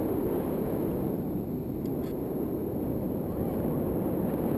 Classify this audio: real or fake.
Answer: real